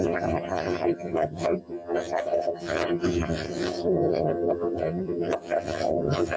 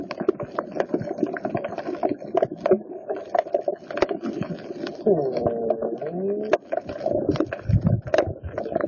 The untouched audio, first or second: second